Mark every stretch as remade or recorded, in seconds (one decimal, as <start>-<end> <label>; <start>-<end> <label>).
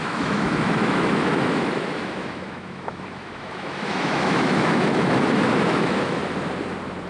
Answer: 0.0-6.2 remade; 6.2-7.1 recorded